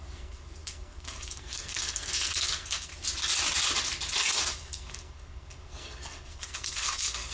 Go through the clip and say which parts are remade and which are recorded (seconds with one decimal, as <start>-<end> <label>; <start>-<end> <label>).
0.0-2.9 remade; 2.9-4.4 recorded; 4.4-7.3 remade